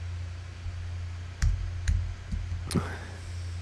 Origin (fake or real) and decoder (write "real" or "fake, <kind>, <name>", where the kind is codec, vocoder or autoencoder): real